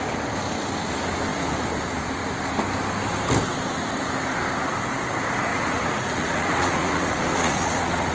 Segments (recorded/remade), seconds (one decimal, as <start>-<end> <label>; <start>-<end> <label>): 0.0-5.5 recorded; 5.5-8.1 remade